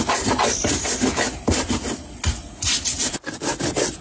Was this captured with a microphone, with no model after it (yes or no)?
yes